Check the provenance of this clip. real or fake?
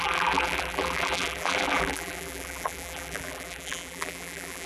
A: fake